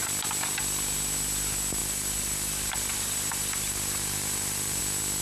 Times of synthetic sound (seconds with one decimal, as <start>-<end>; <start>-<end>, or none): 1.8-4.8